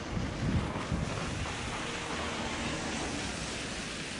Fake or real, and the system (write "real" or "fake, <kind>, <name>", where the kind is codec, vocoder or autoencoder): real